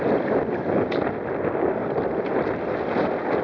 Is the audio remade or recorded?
recorded